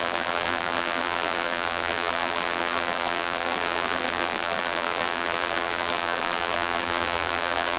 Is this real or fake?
fake